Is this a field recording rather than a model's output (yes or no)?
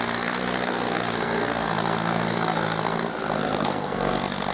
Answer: no